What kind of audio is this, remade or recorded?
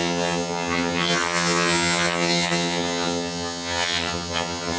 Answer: remade